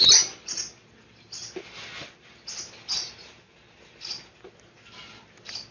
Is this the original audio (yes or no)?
yes